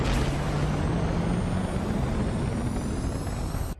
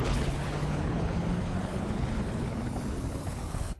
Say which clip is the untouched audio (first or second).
first